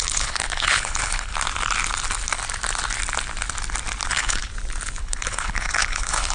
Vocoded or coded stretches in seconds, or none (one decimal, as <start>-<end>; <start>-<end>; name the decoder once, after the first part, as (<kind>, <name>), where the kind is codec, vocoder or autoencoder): 0.0-1.3 (codec, HILCodec); 4.1-4.5; 5.0-6.3